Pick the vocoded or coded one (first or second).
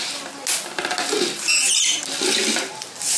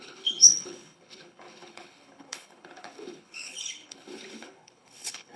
second